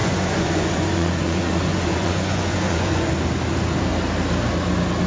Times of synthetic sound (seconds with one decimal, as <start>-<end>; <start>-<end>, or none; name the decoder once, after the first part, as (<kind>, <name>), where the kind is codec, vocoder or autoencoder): 0.0-3.1 (vocoder, Vocos)